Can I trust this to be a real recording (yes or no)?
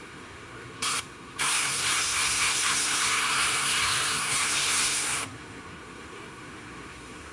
no